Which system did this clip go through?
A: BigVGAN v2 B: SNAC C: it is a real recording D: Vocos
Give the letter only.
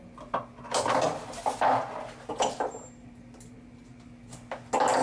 C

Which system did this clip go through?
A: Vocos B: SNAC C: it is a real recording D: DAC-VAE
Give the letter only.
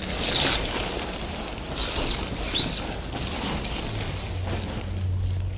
C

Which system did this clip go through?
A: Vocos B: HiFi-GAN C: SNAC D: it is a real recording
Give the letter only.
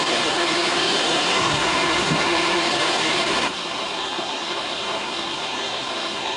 C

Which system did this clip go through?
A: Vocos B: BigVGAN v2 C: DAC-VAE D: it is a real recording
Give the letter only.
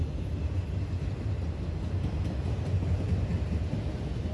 D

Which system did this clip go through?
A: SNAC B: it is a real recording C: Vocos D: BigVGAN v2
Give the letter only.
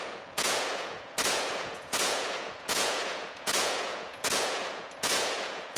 C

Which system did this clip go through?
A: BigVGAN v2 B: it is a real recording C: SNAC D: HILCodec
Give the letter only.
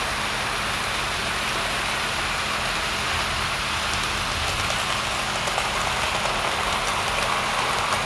B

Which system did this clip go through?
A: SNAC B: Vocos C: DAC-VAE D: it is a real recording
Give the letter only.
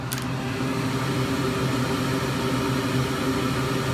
D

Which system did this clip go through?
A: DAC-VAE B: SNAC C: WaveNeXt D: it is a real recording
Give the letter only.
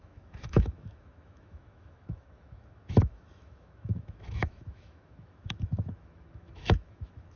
A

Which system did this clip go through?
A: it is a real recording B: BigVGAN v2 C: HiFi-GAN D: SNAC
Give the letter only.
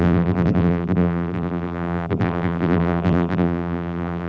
B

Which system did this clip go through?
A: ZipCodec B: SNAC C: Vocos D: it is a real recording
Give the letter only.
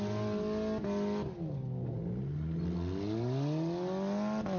D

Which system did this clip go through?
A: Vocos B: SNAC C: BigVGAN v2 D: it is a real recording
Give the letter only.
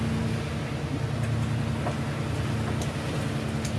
D